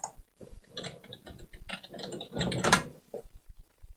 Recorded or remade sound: remade